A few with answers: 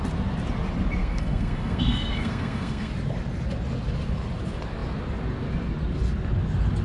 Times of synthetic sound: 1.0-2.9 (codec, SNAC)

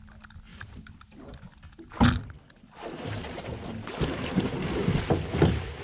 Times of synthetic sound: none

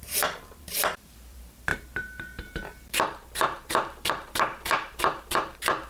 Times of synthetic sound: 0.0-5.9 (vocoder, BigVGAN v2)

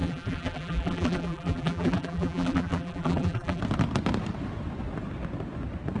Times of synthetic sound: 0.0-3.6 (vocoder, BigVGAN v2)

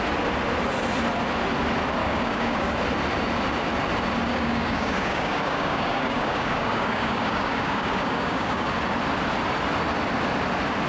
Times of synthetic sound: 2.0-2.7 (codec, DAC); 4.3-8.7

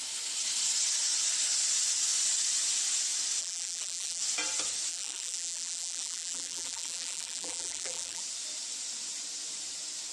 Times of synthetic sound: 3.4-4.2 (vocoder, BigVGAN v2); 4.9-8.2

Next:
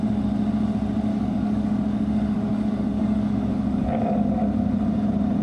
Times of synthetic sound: 1.1-4.3 (codec, DAC)